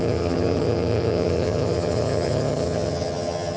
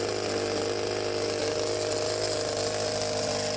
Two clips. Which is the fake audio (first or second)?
first